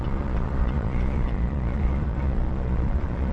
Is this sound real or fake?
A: fake